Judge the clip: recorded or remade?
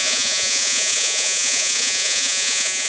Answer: remade